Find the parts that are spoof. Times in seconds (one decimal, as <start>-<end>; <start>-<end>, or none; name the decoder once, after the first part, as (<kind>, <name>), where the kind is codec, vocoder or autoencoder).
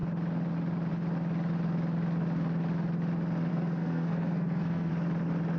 3.5-4.9 (codec, SNAC)